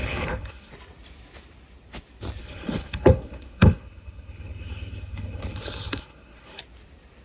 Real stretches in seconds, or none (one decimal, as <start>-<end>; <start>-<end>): 0.7-2.4; 6.6-7.2